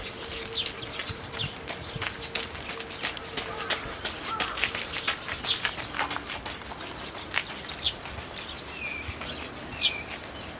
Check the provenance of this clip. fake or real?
real